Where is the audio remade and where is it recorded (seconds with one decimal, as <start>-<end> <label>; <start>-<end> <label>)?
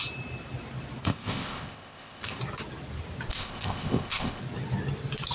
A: 0.0-1.0 recorded; 1.0-2.4 remade; 2.4-3.3 recorded; 3.3-4.4 remade; 4.4-5.3 recorded